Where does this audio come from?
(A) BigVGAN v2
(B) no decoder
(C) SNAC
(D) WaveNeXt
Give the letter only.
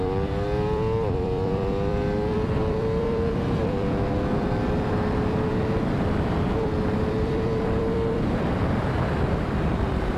A